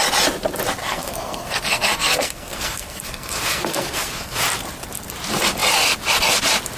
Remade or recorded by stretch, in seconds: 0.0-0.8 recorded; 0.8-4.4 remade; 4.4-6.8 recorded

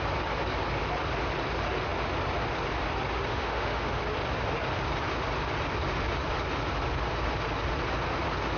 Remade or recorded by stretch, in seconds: 0.0-3.3 recorded; 3.3-4.0 remade; 4.0-8.6 recorded

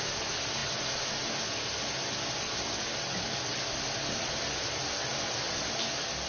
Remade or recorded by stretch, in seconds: 0.0-6.3 recorded

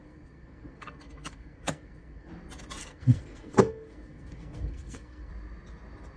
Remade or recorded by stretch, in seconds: 0.0-2.3 remade; 2.3-2.8 recorded; 2.8-5.3 remade; 5.3-6.2 recorded